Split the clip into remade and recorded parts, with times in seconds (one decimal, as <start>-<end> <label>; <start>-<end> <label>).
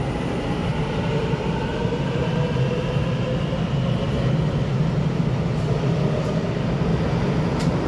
0.0-0.8 recorded; 0.8-2.3 remade; 2.3-7.9 recorded